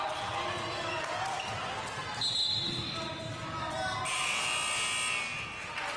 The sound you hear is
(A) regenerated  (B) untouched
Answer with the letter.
B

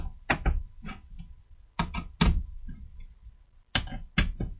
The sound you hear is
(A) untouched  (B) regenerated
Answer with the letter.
A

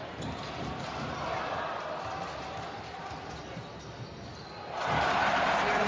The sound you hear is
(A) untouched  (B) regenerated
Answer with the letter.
A